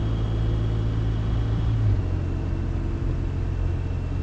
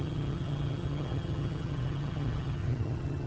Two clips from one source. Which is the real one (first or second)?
first